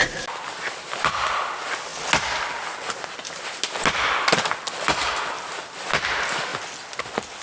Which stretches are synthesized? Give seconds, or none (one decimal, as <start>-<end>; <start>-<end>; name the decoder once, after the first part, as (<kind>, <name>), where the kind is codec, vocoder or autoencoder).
none